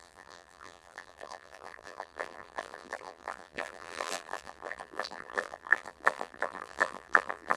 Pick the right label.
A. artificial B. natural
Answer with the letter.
A